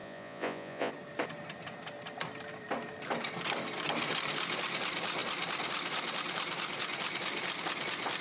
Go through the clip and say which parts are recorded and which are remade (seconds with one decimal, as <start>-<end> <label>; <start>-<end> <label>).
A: 0.0-0.9 remade; 0.9-8.2 recorded